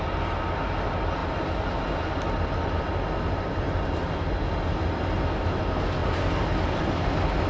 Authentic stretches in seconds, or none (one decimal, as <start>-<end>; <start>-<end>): 0.0-7.5